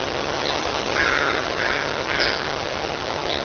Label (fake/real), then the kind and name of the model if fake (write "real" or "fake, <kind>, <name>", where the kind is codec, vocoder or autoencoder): fake, vocoder, HiFi-GAN